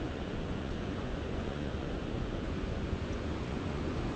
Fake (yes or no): yes